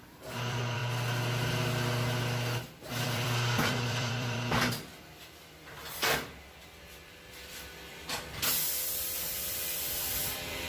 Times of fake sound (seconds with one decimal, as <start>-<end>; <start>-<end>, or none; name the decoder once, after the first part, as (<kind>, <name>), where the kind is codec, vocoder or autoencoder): 0.0-0.8 (vocoder, BigVGAN v2); 2.9-10.7